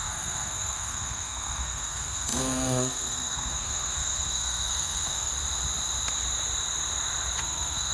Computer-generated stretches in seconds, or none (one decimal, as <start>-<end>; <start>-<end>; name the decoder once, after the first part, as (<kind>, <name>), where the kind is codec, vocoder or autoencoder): 0.0-5.3 (codec, SNAC); 7.4-7.9